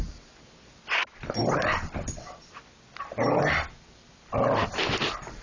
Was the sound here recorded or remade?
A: recorded